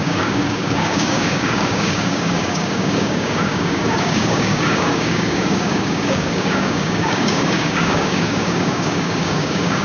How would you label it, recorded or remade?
remade